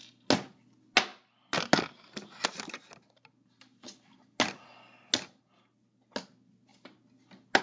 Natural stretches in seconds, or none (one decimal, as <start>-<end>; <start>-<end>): 0.0-7.6